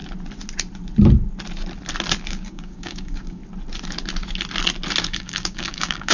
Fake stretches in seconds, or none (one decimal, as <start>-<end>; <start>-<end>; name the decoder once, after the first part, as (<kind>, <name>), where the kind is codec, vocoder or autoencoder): 2.3-3.4 (codec, DAC); 5.0-6.1